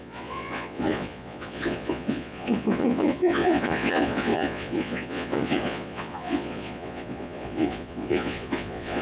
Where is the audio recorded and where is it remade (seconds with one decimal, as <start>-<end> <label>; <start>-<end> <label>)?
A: 0.0-9.0 remade